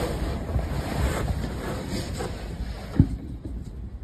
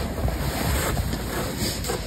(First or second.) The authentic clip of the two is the second